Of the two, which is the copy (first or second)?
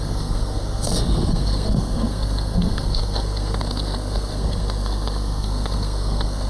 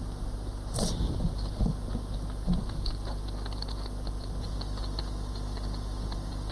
first